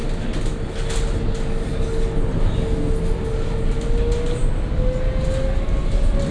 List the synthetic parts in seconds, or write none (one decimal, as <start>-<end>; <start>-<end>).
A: none